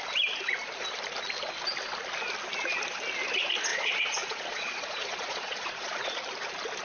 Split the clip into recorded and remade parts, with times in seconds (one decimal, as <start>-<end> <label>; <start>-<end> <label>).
0.0-3.7 recorded; 3.7-6.2 remade; 6.2-6.8 recorded